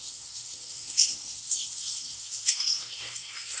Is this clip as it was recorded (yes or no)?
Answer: no